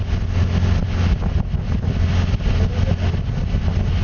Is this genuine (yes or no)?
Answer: yes